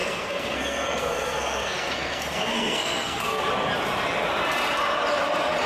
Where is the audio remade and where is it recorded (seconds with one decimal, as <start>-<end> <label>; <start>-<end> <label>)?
0.0-3.4 remade; 3.4-5.7 recorded

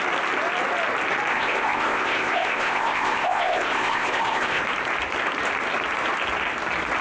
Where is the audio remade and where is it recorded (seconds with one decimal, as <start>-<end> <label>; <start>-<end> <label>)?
0.0-1.3 recorded; 1.3-4.6 remade; 4.6-7.0 recorded

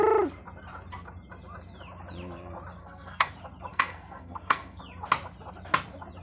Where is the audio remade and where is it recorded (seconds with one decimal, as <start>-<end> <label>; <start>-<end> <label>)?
0.0-2.8 recorded; 2.8-3.3 remade; 3.3-3.7 recorded; 3.7-4.8 remade; 4.8-6.2 recorded

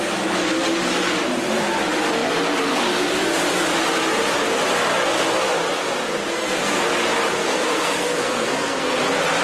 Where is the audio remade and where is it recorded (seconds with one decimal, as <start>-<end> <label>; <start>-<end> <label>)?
0.0-6.2 recorded; 6.2-6.8 remade; 6.8-7.4 recorded; 7.4-9.0 remade; 9.0-9.4 recorded